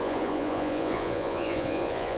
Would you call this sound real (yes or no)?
no